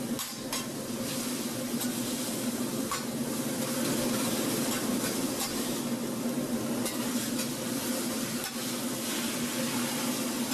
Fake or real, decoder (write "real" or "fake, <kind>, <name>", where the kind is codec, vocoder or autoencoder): real